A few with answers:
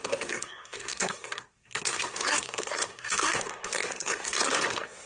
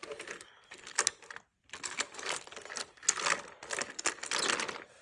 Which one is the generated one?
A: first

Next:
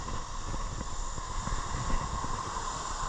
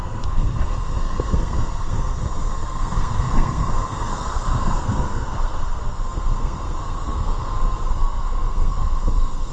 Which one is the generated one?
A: second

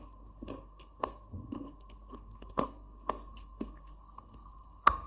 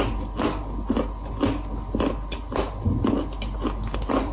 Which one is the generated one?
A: first